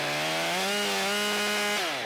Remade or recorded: recorded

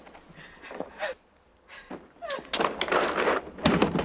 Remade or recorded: recorded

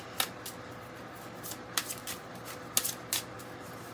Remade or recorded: recorded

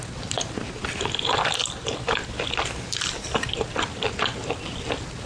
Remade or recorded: remade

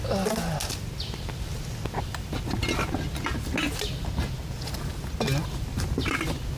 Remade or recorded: recorded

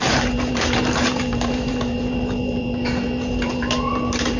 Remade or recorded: remade